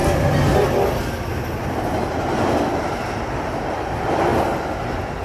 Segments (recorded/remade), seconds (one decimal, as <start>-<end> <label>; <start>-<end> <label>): 0.0-3.1 recorded; 3.1-4.3 remade; 4.3-5.2 recorded

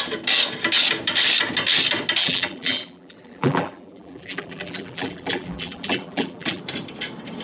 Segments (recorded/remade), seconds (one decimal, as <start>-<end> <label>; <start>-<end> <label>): 0.0-2.2 recorded; 2.2-6.6 remade; 6.6-7.4 recorded

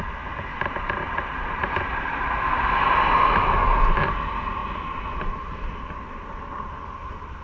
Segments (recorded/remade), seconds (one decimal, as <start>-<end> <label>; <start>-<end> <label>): 0.0-0.5 recorded; 0.5-2.5 remade; 2.5-7.4 recorded

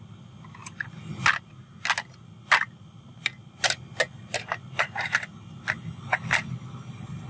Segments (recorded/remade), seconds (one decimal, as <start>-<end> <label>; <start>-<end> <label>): 0.0-7.3 recorded

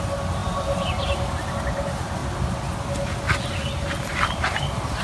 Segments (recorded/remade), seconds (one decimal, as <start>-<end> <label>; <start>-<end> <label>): 0.0-0.4 recorded; 0.4-0.9 remade; 0.9-4.1 recorded; 4.1-5.0 remade